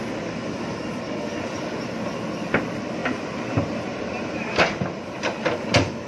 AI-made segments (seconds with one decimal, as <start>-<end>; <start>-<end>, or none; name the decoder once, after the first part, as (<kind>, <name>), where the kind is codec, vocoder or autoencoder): 3.0-4.7 (vocoder, BigVGAN v2)